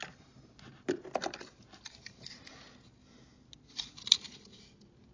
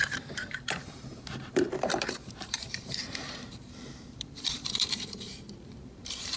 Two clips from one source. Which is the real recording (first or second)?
first